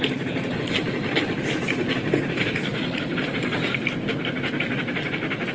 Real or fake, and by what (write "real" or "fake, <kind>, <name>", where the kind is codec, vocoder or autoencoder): real